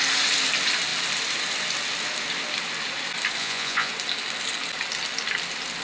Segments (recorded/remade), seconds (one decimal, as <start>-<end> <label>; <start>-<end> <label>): 0.0-3.4 recorded; 3.4-3.9 remade; 3.9-5.8 recorded